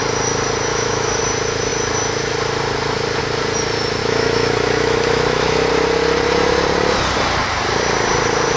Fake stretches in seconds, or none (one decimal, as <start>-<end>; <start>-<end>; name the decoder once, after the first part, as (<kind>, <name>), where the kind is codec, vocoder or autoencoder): 0.7-1.2 (autoencoder, DAC-VAE); 4.0-5.7